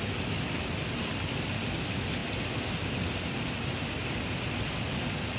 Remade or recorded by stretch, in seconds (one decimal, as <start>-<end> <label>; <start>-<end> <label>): 0.0-5.4 recorded